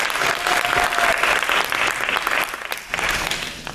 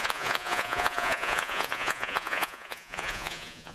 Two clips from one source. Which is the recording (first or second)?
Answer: first